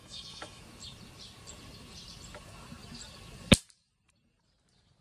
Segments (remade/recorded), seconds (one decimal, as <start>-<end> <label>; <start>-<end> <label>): 0.0-0.6 remade; 0.6-5.0 recorded